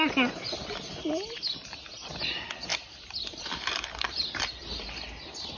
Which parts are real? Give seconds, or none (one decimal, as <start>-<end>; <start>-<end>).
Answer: 0.0-2.7; 4.6-5.6